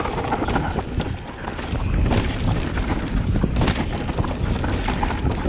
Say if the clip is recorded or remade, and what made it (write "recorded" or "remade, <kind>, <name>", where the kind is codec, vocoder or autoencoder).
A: recorded